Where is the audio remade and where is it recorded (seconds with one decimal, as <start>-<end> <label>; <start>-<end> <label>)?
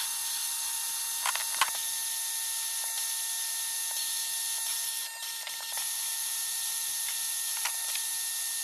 0.0-0.4 recorded; 0.4-1.0 remade; 1.0-4.7 recorded; 4.7-8.1 remade; 8.1-8.6 recorded